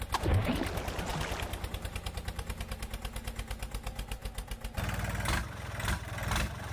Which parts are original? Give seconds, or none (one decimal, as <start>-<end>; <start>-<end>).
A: 0.0-6.7